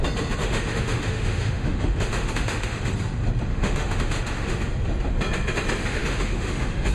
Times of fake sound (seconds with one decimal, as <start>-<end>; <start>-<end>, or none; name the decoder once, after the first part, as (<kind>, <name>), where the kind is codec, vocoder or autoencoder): 0.4-2.9 (autoencoder, DAC-VAE); 3.5-4.6; 5.8-6.9